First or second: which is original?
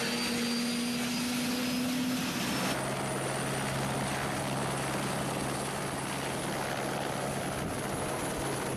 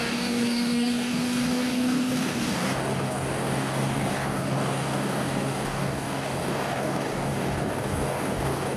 first